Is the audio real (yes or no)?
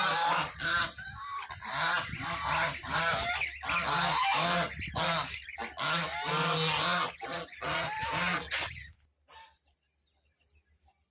yes